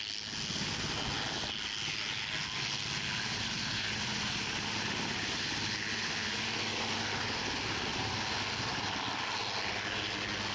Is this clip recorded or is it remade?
recorded